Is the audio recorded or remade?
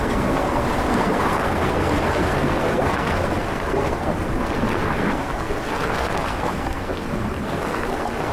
remade